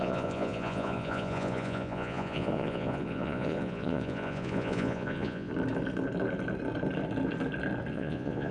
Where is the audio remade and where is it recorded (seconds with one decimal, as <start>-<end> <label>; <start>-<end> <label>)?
0.0-5.5 remade; 5.5-7.9 recorded; 7.9-8.5 remade

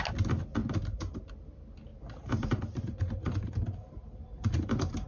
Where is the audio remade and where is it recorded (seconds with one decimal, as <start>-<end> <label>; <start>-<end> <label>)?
0.0-0.6 recorded; 0.6-1.3 remade; 1.3-1.9 recorded; 1.9-5.1 remade

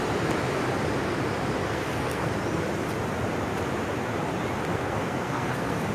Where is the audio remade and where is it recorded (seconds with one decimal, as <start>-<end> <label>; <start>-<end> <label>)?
0.0-1.6 recorded; 1.6-2.3 remade; 2.3-4.7 recorded; 4.7-5.9 remade

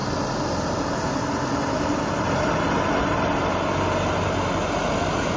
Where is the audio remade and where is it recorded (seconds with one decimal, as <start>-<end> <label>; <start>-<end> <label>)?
0.0-5.4 recorded

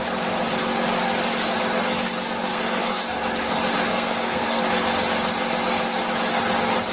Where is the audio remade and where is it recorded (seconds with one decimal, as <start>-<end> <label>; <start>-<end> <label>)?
0.0-2.5 recorded; 2.5-3.0 remade; 3.0-3.9 recorded; 3.9-4.6 remade; 4.6-6.9 recorded

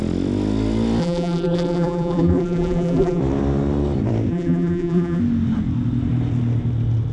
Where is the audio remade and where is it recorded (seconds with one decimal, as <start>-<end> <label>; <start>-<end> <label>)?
0.0-1.0 recorded; 1.0-3.2 remade; 3.2-4.3 recorded; 4.3-5.2 remade; 5.2-7.1 recorded

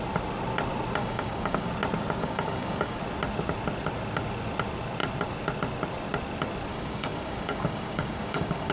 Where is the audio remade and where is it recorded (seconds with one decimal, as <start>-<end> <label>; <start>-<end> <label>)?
0.0-1.0 recorded; 1.0-1.7 remade; 1.7-2.2 recorded; 2.2-3.0 remade; 3.0-6.7 recorded; 6.7-8.7 remade